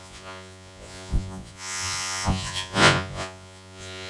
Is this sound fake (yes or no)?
yes